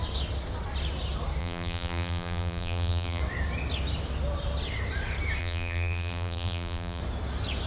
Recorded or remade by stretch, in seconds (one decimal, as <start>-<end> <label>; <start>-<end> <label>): 0.0-1.4 recorded; 1.4-3.2 remade; 3.2-5.4 recorded; 5.4-7.0 remade; 7.0-7.7 recorded

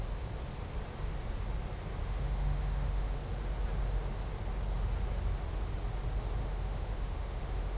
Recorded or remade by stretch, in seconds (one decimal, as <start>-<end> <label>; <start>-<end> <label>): 0.0-2.0 recorded; 2.0-3.2 remade; 3.2-6.4 recorded; 6.4-7.8 remade

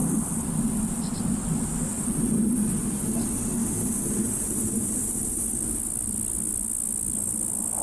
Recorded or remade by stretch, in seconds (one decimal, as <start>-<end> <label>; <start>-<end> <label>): 0.0-0.9 remade; 0.9-1.9 recorded; 1.9-2.9 remade; 2.9-7.8 recorded